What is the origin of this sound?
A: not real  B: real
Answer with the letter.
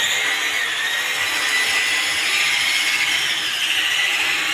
B